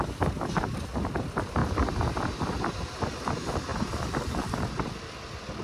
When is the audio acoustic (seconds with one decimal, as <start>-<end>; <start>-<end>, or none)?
0.0-5.6